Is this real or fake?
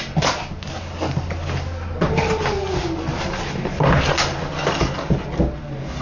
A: real